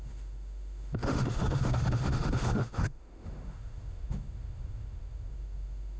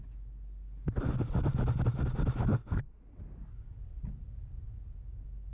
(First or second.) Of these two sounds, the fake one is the first